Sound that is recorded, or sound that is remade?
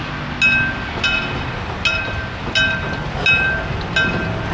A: recorded